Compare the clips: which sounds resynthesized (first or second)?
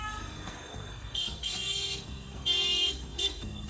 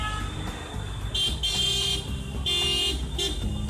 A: first